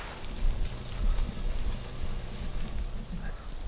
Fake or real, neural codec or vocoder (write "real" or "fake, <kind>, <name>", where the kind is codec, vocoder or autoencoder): real